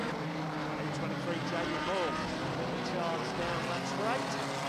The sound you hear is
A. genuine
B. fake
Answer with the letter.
A